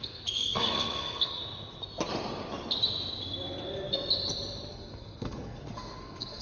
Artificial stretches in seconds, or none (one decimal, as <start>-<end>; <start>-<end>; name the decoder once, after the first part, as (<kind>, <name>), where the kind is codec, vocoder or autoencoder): 0.0-1.4 (codec, SNAC); 4.7-6.4